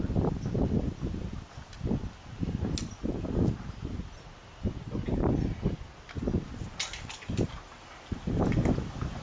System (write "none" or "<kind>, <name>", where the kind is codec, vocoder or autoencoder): none